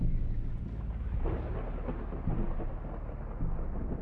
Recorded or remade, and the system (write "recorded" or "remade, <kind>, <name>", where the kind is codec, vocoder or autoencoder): recorded